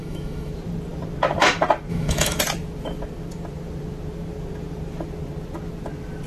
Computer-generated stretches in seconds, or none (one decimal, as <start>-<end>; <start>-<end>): 0.0-0.5; 1.9-2.4